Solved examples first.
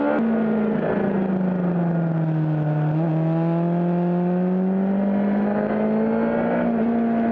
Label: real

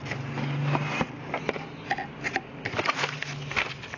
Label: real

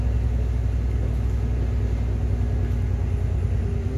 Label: real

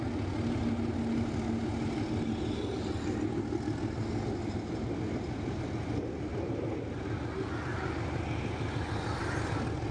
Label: real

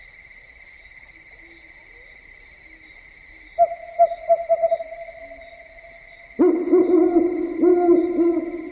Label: real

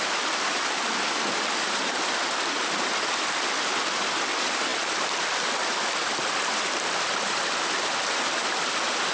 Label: fake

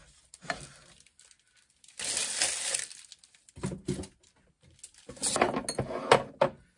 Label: real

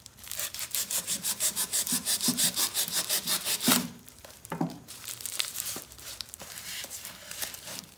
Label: fake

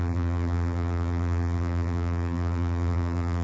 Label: fake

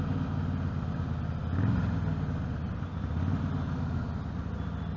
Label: real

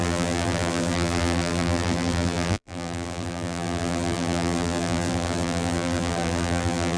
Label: fake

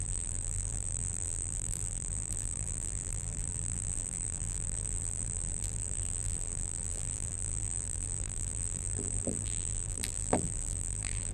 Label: fake